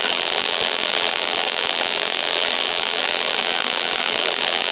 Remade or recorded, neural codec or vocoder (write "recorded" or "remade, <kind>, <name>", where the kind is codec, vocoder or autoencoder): remade, vocoder, BigVGAN v2